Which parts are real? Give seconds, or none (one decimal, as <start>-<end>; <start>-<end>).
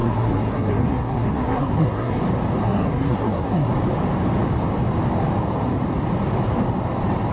2.2-2.6; 3.7-7.3